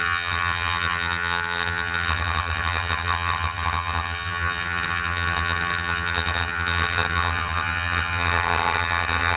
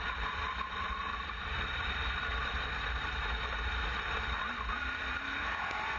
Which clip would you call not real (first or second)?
first